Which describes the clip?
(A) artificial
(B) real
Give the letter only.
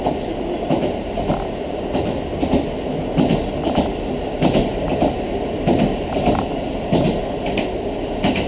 B